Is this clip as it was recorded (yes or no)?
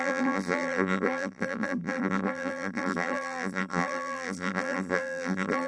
no